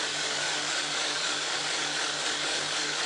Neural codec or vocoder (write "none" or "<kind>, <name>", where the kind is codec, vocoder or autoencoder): codec, DAC